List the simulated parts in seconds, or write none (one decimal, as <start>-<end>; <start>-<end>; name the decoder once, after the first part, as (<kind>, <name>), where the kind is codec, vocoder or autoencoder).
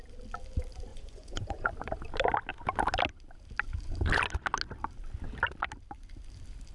0.9-1.7 (vocoder, Vocos)